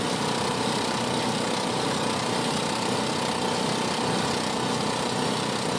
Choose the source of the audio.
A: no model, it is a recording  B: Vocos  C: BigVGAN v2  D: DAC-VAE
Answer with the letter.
A